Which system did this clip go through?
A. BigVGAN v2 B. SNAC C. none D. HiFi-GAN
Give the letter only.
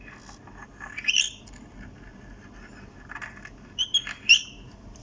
C